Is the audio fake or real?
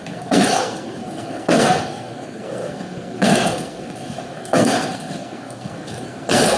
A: fake